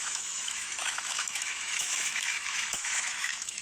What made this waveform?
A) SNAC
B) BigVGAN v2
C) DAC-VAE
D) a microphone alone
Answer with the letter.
C